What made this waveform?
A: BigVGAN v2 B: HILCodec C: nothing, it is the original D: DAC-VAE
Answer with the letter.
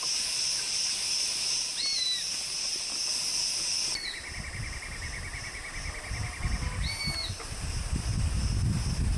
C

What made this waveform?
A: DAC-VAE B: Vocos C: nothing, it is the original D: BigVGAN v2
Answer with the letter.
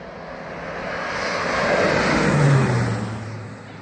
C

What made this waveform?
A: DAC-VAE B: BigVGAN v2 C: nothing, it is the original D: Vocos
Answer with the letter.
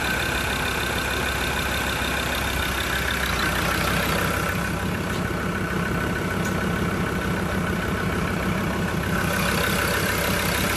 C